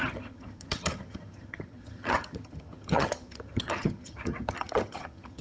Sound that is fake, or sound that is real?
fake